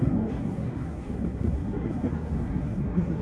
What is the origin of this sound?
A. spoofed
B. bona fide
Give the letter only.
A